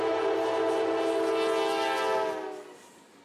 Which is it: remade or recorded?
recorded